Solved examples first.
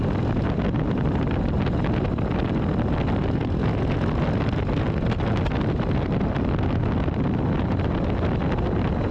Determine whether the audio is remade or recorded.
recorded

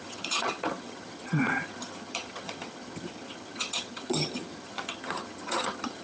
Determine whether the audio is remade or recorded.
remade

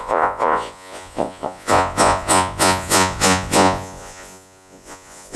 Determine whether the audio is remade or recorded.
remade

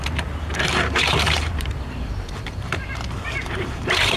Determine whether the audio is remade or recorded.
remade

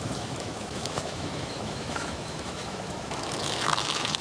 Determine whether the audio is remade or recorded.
remade